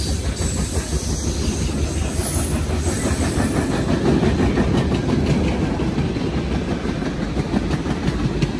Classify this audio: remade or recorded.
recorded